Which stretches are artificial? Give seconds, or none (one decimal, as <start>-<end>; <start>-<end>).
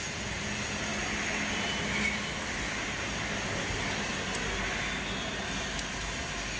none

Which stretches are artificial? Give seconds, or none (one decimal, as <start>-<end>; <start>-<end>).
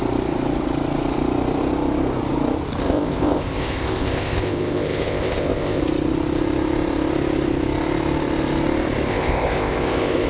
2.8-5.8; 9.1-10.3